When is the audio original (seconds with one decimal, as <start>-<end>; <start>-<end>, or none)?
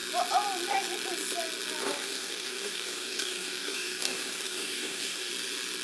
0.0-1.8; 5.3-5.8